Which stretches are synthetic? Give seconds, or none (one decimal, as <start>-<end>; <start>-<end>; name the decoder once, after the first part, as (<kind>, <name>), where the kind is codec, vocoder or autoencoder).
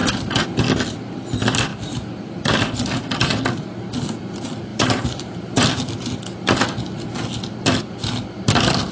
0.0-0.6 (vocoder, BigVGAN v2); 4.7-5.7